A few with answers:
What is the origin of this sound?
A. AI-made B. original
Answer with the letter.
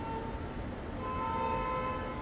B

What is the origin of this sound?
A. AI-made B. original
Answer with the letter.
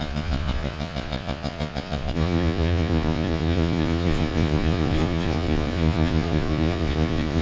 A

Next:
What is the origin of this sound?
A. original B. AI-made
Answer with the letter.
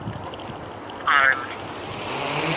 A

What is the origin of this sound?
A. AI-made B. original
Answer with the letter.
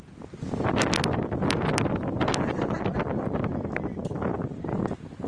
B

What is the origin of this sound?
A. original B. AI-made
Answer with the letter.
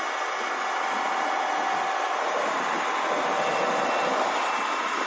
A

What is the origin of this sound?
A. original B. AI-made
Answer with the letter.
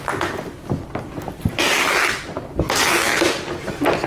A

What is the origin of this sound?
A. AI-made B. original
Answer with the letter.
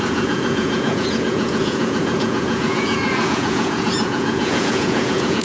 A